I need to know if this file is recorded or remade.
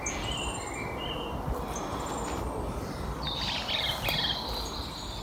recorded